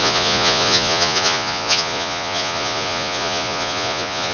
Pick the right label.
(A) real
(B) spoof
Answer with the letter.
B